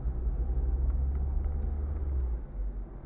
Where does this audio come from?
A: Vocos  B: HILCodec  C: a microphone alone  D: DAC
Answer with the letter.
C